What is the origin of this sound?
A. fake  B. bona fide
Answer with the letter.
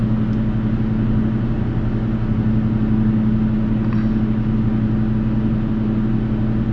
B